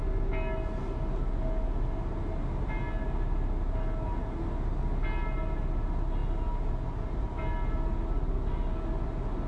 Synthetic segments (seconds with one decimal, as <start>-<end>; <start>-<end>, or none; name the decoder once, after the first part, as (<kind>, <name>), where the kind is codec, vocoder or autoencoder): none